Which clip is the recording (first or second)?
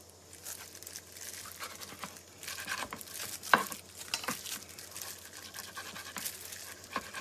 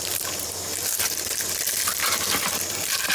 first